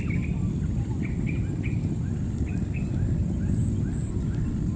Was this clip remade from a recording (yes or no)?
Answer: no